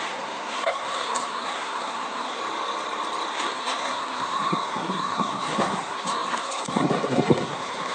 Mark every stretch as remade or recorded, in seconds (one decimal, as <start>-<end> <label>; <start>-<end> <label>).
0.0-2.4 remade; 2.4-3.3 recorded; 3.3-7.9 remade